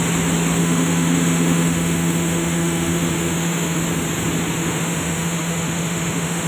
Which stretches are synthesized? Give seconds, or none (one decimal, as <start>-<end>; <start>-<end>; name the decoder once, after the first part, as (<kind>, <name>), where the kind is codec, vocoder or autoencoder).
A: 0.6-3.8 (autoencoder, DAC-VAE); 4.6-6.5